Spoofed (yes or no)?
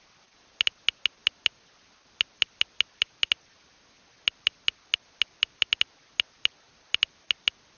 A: no